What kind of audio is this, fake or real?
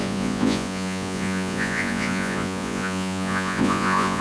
fake